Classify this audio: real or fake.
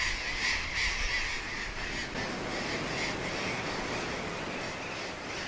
real